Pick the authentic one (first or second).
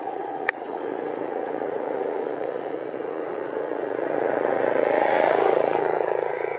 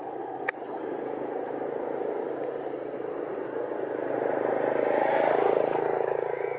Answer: second